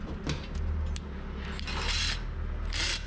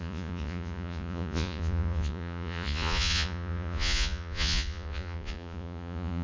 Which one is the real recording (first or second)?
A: first